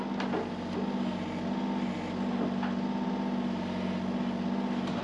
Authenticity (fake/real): real